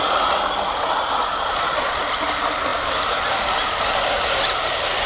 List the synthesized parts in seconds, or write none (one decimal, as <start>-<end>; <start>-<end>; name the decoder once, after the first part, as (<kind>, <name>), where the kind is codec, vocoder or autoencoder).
1.3-2.0 (vocoder, Vocos)